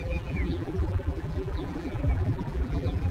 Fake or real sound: fake